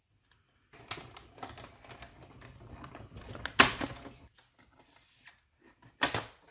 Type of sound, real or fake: real